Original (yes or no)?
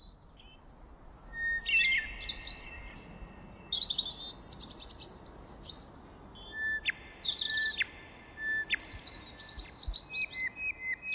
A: yes